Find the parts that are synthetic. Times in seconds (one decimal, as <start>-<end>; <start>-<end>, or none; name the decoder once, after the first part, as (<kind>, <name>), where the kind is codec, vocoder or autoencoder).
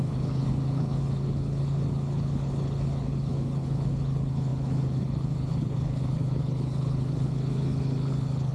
0.0-8.5 (codec, HILCodec)